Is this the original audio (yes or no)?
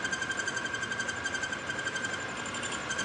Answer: yes